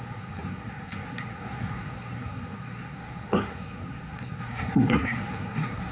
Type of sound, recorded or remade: remade